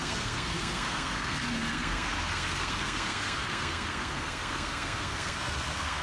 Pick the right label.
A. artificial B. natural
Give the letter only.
A